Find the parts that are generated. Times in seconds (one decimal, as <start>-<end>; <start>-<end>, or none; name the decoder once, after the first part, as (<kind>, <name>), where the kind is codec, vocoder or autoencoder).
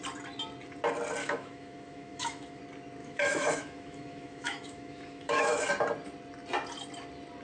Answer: 1.2-2.6 (autoencoder, DAC-VAE); 3.0-5.7